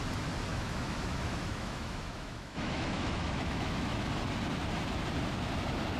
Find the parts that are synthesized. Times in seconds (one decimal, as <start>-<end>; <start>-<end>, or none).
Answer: 0.5-4.1